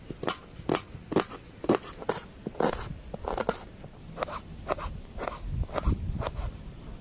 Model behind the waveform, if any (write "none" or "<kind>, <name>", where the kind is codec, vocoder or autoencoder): none